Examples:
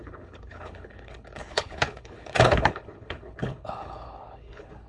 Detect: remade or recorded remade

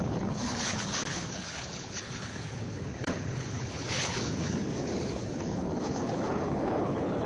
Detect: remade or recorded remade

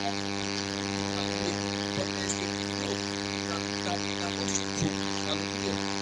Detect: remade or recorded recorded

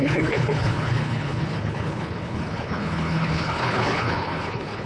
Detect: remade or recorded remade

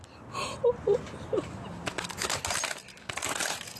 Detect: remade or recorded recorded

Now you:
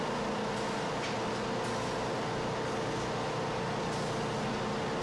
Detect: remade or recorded recorded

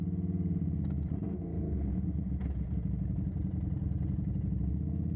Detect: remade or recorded recorded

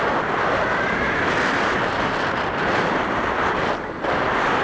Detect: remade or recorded recorded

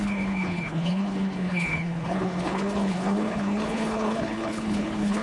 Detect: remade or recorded remade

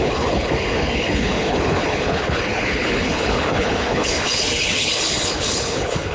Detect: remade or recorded remade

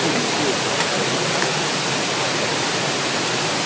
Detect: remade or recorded recorded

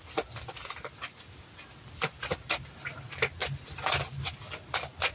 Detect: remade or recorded recorded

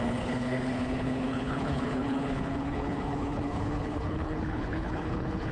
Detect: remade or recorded remade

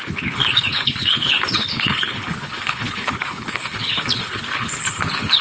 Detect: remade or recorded remade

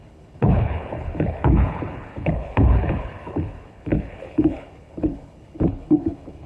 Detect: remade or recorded remade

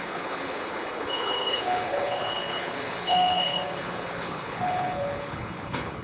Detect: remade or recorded remade